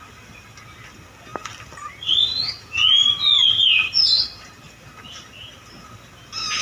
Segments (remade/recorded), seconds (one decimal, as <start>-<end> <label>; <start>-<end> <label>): 0.0-6.6 recorded